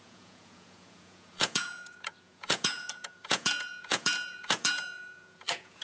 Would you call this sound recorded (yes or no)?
no